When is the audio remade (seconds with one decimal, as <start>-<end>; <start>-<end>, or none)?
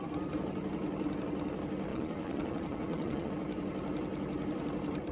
1.9-3.3